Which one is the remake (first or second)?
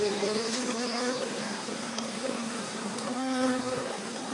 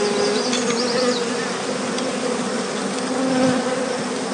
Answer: first